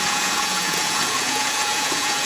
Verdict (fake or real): fake